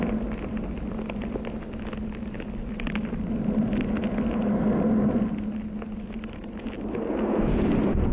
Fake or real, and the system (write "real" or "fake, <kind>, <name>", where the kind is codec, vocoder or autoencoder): real